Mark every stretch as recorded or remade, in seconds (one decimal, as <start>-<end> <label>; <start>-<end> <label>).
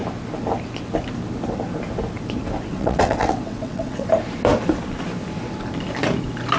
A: 0.0-2.7 recorded; 2.7-4.1 remade; 4.1-6.6 recorded